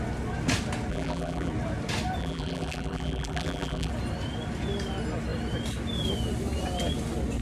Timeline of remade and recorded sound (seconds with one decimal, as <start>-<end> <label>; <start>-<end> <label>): 0.0-0.9 recorded; 0.9-1.5 remade; 1.5-2.2 recorded; 2.2-3.9 remade; 3.9-7.4 recorded